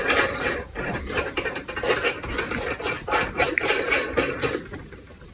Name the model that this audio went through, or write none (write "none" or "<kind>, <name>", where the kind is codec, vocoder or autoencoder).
vocoder, BigVGAN v2